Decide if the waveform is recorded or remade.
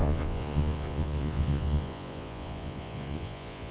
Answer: remade